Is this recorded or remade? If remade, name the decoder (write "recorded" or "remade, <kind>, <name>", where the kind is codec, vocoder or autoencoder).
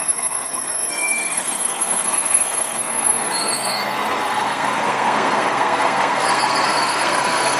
remade, codec, SNAC